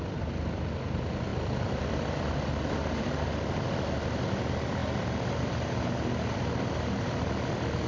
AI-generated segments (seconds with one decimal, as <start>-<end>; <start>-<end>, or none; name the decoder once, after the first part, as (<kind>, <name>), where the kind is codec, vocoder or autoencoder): none